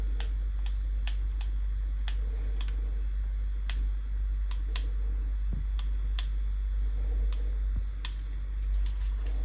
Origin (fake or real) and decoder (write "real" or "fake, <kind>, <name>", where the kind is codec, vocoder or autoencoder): real